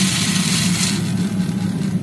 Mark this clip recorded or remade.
recorded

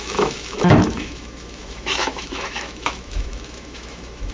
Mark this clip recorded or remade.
remade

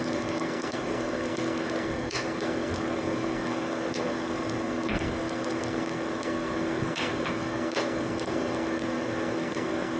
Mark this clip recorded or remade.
remade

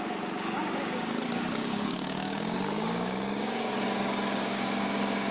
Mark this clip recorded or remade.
remade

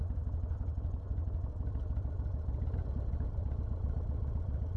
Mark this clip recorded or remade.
recorded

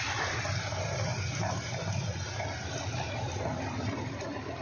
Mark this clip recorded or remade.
recorded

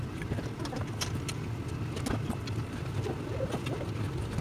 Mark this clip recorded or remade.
recorded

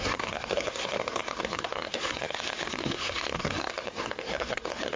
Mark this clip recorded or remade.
remade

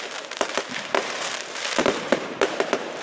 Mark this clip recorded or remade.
remade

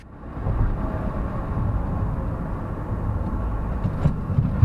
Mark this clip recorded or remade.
recorded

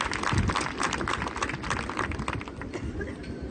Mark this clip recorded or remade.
recorded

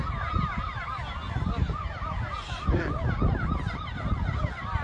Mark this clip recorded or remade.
recorded